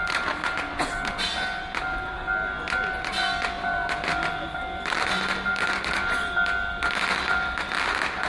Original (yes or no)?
yes